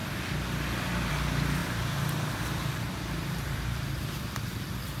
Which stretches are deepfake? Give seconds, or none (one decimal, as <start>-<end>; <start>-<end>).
1.6-4.4

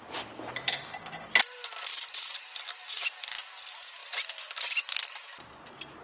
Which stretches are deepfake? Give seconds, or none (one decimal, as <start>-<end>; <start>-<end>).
4.0-4.6

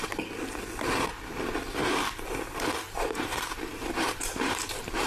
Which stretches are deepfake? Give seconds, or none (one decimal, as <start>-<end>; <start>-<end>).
1.8-5.1

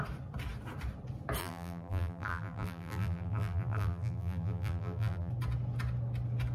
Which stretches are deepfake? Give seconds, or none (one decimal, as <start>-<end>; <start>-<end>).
1.4-5.3

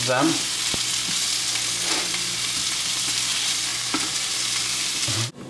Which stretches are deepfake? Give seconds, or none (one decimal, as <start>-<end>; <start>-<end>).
3.7-4.3

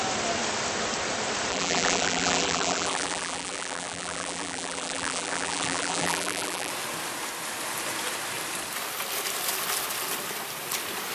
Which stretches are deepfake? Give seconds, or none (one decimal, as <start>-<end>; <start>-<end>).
1.5-6.7

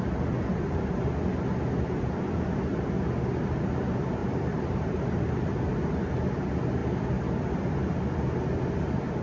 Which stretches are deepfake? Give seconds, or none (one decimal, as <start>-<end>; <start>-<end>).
0.5-1.0; 4.2-5.3